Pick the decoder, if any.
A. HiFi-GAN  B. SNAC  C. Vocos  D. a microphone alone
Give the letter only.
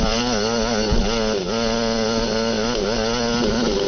D